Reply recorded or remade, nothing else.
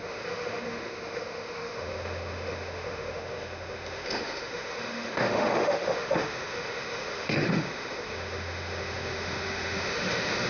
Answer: remade